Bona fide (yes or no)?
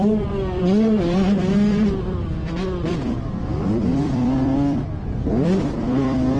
no